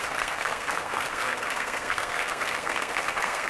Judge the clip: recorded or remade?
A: remade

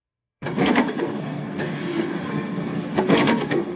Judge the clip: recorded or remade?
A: remade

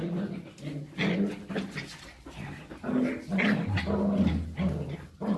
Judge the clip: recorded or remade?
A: recorded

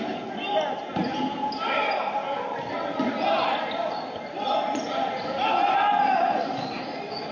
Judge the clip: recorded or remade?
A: recorded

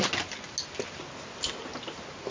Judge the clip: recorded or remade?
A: recorded